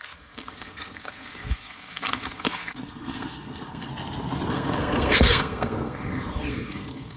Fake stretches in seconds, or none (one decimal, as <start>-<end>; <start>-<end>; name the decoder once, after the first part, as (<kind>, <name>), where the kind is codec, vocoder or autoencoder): 0.0-3.9 (codec, SNAC); 4.5-7.2